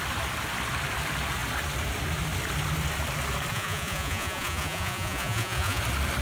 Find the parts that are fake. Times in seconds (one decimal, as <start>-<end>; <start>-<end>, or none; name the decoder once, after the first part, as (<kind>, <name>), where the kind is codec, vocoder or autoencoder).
3.5-5.8 (vocoder, Vocos)